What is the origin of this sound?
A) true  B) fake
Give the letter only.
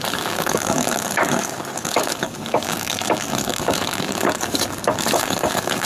B